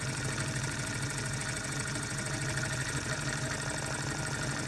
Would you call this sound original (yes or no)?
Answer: yes